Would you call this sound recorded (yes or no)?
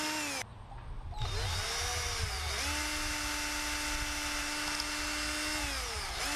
yes